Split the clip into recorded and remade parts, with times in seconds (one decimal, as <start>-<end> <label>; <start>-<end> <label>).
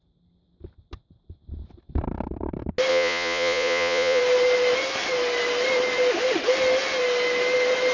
0.0-2.9 recorded; 2.9-4.2 remade; 4.2-7.9 recorded